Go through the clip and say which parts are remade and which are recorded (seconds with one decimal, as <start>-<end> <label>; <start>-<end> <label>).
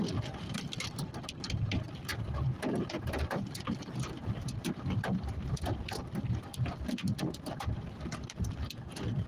0.0-9.3 remade